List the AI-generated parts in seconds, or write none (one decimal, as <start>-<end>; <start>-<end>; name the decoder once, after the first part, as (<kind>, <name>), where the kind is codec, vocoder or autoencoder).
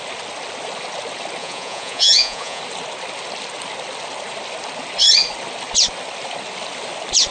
1.4-2.6 (vocoder, Vocos)